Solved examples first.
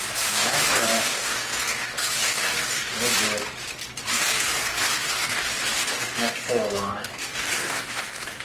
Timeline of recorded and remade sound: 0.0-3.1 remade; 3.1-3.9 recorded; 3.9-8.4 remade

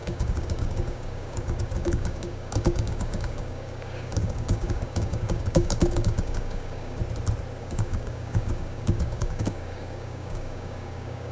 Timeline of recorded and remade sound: 0.0-7.0 remade; 7.0-7.6 recorded; 7.6-11.3 remade

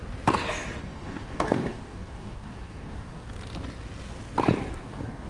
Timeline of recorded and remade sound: 0.0-0.8 recorded; 0.8-3.3 remade; 3.3-4.8 recorded; 4.8-5.3 remade